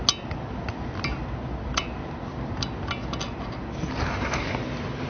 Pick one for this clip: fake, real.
real